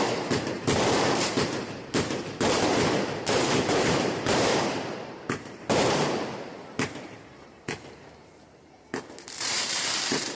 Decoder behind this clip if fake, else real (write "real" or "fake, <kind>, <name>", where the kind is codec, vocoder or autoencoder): fake, vocoder, BigVGAN v2